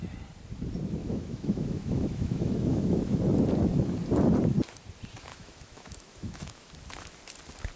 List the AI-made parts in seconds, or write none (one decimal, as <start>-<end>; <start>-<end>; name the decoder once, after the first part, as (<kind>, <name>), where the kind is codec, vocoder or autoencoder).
1.0-3.2 (autoencoder, DAC-VAE); 5.3-6.7

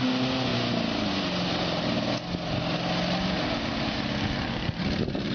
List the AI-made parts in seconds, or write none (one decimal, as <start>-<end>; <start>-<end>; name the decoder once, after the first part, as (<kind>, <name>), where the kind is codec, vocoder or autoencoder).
none

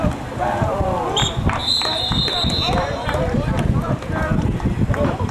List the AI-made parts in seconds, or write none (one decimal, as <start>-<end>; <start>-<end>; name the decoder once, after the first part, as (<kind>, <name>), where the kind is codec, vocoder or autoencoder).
0.0-5.3 (vocoder, BigVGAN v2)

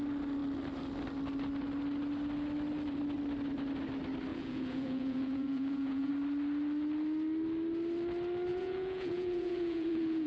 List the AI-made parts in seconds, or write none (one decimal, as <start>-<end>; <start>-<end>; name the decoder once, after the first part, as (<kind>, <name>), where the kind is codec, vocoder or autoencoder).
4.3-6.1 (vocoder, Vocos); 8.5-10.3

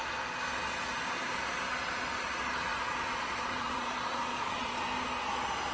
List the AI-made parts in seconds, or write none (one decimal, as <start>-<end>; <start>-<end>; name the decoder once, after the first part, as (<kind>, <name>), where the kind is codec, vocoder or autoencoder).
2.7-4.8 (vocoder, Vocos)

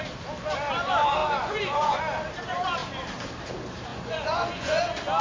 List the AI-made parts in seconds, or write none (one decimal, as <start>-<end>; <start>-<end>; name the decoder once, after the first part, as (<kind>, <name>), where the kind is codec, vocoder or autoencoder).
1.2-2.0 (vocoder, Vocos); 3.9-4.8

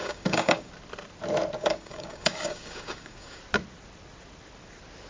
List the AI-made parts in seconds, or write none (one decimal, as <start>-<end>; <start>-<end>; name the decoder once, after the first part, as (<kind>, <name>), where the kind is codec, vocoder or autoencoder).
0.0-0.7 (codec, DAC); 1.6-3.4